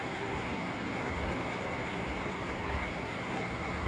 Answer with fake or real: fake